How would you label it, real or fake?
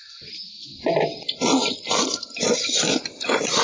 real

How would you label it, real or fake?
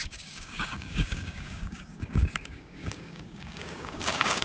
fake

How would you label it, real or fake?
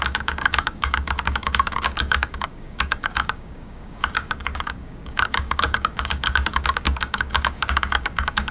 fake